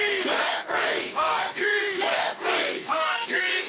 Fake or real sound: fake